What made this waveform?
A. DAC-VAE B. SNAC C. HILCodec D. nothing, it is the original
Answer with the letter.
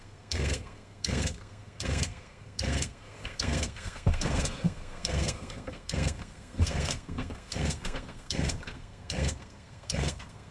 B